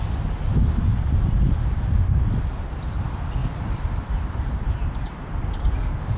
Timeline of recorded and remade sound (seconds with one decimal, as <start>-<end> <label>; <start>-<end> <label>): 0.0-0.6 recorded; 0.6-1.5 remade; 1.5-3.4 recorded; 3.4-5.8 remade; 5.8-6.2 recorded